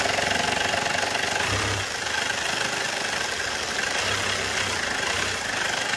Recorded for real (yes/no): yes